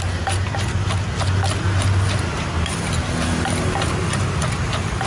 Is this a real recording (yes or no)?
yes